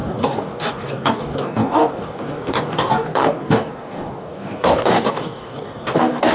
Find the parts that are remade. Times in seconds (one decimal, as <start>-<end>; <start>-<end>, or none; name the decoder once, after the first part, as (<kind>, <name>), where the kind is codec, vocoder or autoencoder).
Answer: 0.0-6.3 (codec, DAC)